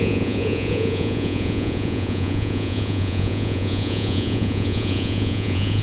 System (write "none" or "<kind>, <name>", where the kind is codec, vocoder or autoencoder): vocoder, Vocos